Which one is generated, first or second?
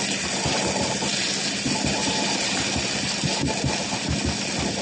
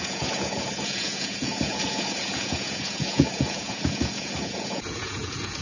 second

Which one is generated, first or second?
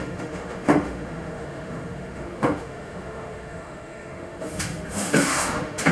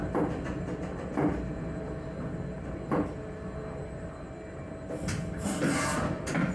first